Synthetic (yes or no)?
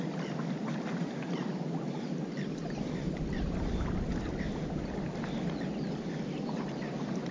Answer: no